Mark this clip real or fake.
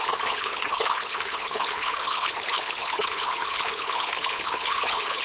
fake